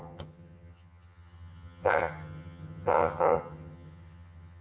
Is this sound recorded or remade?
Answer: remade